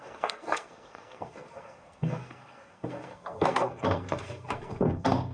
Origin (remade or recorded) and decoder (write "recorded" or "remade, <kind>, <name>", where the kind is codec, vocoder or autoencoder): remade, codec, SNAC